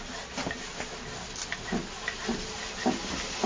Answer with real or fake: real